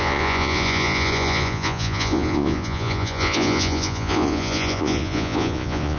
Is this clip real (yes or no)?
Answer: no